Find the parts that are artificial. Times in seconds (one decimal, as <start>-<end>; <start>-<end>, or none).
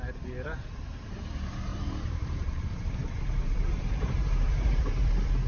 1.7-5.0